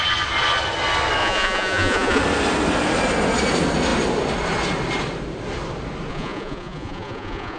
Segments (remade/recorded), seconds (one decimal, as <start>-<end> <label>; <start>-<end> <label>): 0.0-1.2 recorded; 1.2-2.2 remade; 2.2-6.1 recorded; 6.1-7.6 remade